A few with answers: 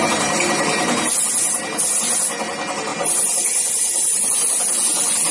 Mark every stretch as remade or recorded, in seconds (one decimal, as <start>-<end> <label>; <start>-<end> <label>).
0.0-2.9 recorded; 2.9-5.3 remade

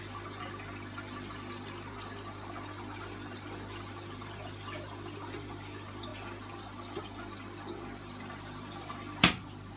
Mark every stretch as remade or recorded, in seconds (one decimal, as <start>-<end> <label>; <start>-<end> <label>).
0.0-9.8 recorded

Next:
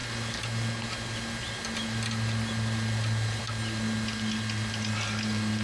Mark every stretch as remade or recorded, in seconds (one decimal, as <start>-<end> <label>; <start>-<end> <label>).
0.0-5.6 recorded